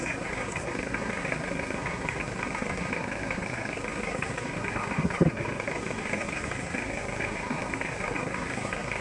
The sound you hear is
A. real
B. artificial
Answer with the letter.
B